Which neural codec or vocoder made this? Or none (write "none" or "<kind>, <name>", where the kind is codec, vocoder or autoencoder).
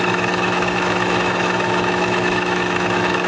autoencoder, DAC-VAE